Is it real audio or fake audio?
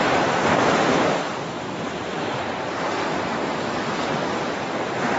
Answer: fake